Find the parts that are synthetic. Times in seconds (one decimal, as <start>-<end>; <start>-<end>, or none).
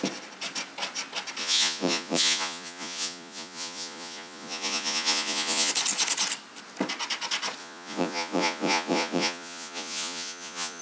1.4-5.7; 7.6-10.8